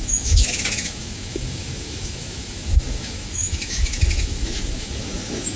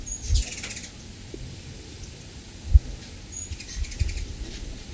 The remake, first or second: first